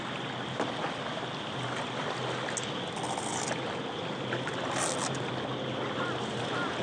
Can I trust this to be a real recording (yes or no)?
yes